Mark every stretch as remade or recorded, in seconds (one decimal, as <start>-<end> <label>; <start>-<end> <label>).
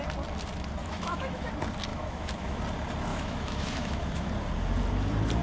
0.0-0.8 recorded; 0.8-1.5 remade; 1.5-1.9 recorded; 1.9-2.6 remade; 2.6-3.1 recorded; 3.1-4.3 remade; 4.3-5.4 recorded